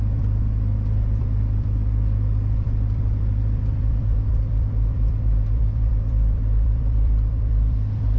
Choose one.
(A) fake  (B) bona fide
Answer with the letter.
A